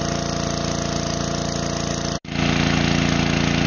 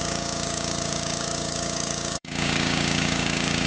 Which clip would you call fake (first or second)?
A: second